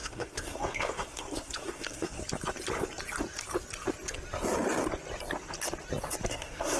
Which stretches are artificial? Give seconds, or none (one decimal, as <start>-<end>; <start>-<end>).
0.0-2.2; 6.3-6.8